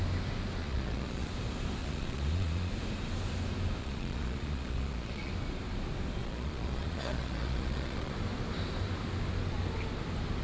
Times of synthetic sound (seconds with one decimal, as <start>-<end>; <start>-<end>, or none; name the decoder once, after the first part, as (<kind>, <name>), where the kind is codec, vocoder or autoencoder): 0.6-1.3 (vocoder, Vocos); 1.8-2.7; 3.8-5.3; 6.2-8.1